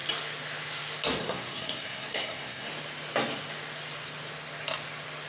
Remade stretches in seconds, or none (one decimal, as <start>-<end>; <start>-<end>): 1.2-2.7